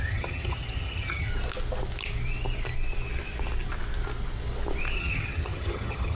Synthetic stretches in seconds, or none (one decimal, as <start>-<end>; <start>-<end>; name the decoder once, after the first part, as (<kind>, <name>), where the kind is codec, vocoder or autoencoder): 0.0-1.3 (vocoder, HiFi-GAN); 5.0-6.1